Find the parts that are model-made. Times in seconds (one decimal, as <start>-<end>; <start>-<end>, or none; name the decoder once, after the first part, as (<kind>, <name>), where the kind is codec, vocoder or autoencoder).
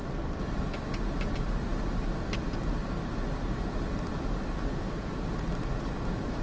none